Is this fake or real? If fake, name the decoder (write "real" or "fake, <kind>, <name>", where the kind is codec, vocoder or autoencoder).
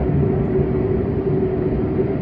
real